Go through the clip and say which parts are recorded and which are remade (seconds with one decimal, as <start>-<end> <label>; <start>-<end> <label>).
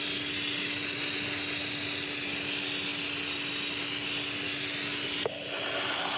0.0-6.2 recorded